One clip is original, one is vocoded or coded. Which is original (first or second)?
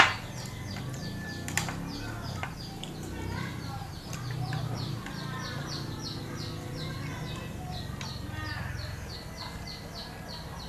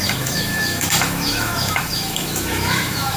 first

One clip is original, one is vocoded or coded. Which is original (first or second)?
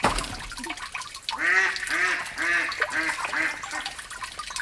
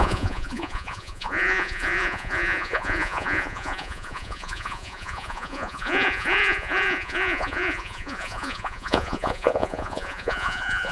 first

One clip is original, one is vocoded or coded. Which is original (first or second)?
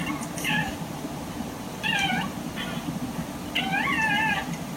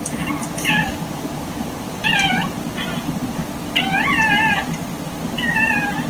second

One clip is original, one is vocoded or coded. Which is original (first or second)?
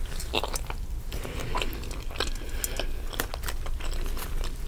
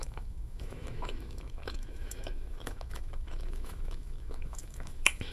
first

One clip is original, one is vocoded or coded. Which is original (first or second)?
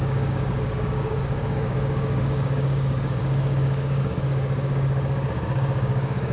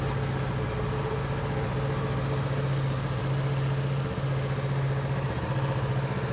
second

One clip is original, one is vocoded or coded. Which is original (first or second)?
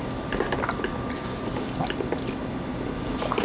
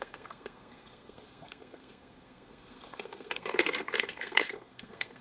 first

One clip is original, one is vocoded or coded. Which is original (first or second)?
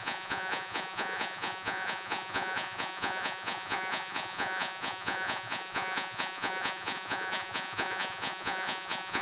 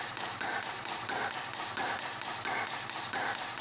second